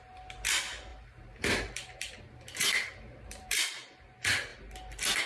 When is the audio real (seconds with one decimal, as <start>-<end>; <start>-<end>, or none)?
0.0-0.9; 3.7-5.3